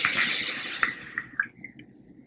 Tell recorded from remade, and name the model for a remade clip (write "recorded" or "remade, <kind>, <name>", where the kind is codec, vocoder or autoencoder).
recorded